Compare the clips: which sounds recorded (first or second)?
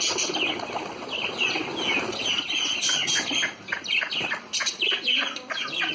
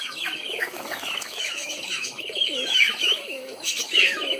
first